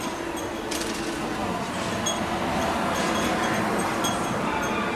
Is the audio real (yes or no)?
yes